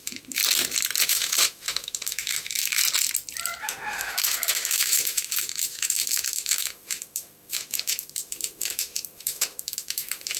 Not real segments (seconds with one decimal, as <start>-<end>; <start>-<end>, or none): 0.0-0.4; 1.0-2.8; 3.6-10.4